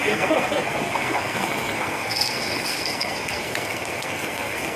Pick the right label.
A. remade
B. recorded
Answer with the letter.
A